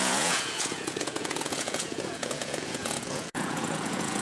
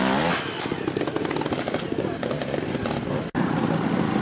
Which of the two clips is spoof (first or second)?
first